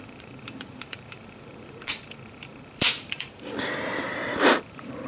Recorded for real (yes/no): no